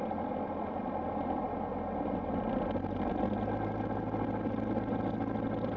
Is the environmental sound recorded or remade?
recorded